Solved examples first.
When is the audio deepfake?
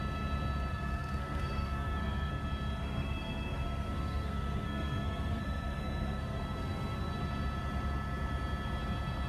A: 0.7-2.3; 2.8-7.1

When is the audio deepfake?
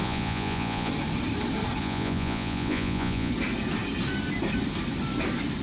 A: 0.0-0.9; 1.8-3.3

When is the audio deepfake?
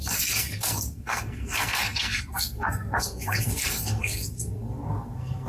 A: 0.0-5.5